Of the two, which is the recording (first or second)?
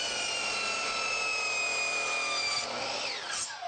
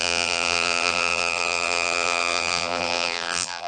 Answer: first